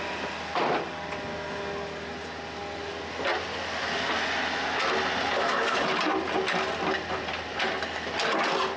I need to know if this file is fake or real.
real